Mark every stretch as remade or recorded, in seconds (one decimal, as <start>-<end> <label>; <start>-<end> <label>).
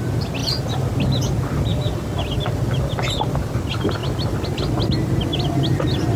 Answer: 0.0-5.3 recorded; 5.3-6.2 remade